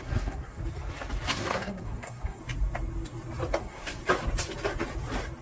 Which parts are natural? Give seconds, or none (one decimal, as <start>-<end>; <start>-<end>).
0.6-1.3; 2.4-3.6; 4.0-5.4